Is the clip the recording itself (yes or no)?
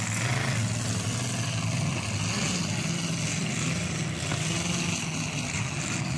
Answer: yes